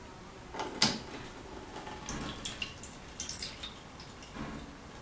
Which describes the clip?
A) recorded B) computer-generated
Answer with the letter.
A